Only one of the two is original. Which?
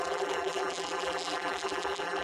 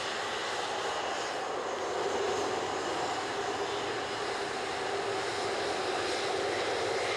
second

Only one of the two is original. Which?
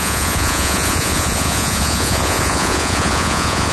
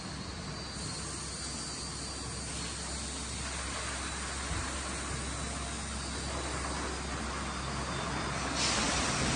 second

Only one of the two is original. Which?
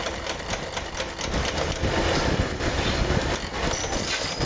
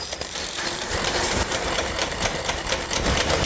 first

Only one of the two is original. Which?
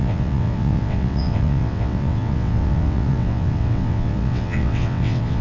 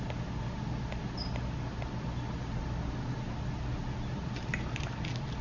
second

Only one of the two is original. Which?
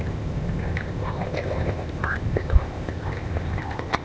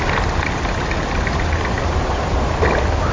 second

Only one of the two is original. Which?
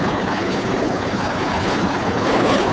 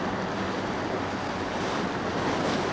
second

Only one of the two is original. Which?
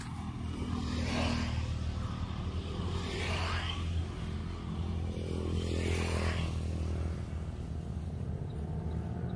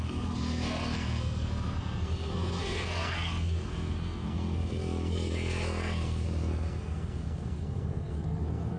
first